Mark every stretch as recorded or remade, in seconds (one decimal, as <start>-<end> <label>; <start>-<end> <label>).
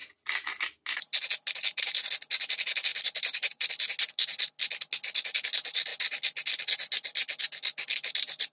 0.0-2.9 recorded; 2.9-3.7 remade; 3.7-8.5 recorded